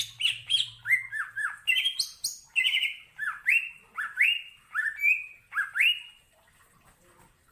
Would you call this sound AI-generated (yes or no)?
no